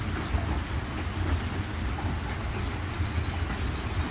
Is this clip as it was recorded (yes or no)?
yes